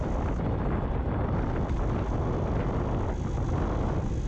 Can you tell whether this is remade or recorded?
recorded